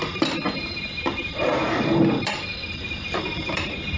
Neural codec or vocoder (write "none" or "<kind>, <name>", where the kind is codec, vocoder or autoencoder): none